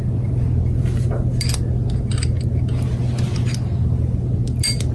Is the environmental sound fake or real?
real